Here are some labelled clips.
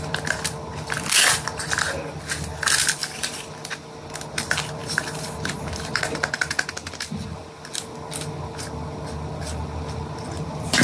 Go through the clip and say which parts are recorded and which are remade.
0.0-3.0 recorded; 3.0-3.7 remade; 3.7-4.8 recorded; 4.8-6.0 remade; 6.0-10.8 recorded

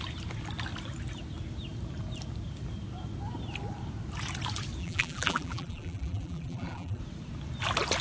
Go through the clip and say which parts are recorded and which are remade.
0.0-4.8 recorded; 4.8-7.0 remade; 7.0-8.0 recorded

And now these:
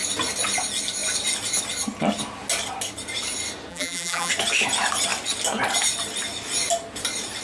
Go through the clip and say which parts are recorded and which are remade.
0.0-3.7 recorded; 3.7-4.3 remade; 4.3-7.4 recorded

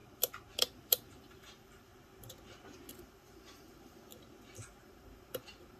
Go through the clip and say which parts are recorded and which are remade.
0.0-0.6 recorded; 0.6-1.9 remade; 1.9-2.9 recorded; 2.9-4.1 remade; 4.1-4.8 recorded; 4.8-5.8 remade